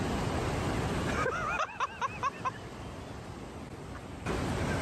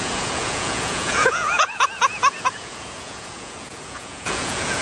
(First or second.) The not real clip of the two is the second